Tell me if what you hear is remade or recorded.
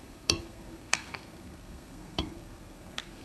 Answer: remade